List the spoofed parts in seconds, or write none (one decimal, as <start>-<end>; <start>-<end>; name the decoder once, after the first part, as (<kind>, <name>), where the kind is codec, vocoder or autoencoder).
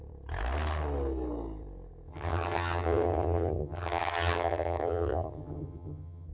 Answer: 2.1-6.3 (vocoder, HiFi-GAN)